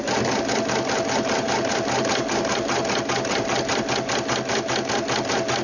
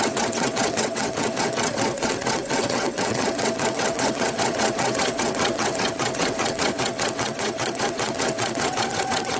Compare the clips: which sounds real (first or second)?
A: first